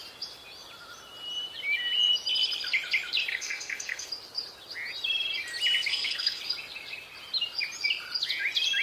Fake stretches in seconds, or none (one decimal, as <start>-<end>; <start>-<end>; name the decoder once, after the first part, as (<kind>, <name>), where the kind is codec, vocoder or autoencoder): 3.3-4.1 (codec, SNAC); 5.9-6.4